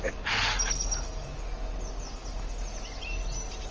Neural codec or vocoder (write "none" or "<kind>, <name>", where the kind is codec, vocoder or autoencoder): none